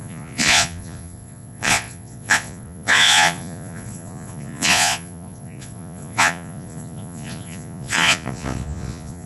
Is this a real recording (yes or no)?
no